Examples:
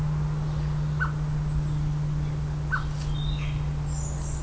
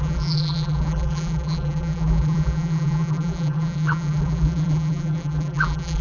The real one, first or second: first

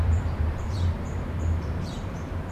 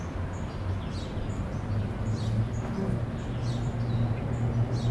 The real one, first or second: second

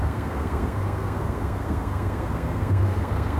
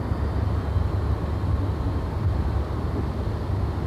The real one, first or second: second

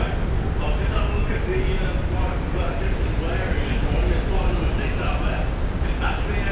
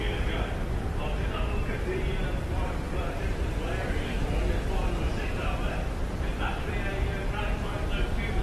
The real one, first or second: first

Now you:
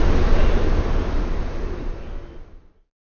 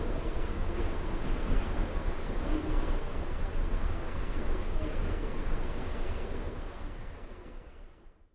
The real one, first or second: first